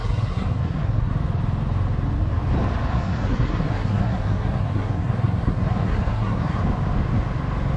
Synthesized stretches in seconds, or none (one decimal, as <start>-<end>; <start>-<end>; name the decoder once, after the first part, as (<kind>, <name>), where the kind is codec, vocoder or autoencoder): 0.0-1.1 (codec, SNAC); 2.9-6.6